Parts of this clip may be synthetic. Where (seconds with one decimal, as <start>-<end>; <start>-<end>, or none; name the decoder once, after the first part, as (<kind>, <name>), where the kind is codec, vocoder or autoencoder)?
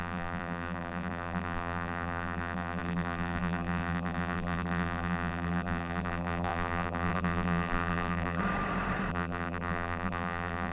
0.0-8.4 (vocoder, BigVGAN v2); 9.1-10.7